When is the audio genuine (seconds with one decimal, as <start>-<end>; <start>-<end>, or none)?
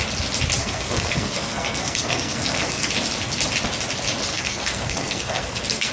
0.0-0.6; 2.9-4.3